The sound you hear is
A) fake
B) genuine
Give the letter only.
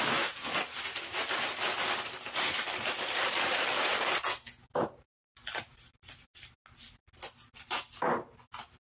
B